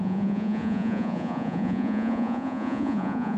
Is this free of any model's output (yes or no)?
no